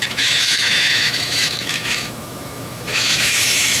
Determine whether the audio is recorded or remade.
remade